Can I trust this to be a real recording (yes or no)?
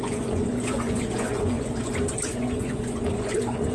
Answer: no